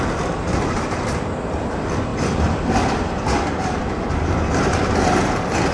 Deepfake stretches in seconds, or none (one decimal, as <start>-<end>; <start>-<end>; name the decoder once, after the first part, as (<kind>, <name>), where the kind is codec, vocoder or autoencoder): 0.0-5.7 (vocoder, BigVGAN v2)